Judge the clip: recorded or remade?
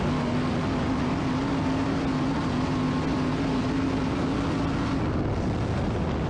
recorded